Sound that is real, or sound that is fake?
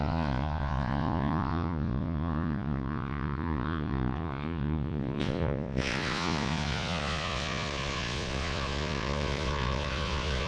fake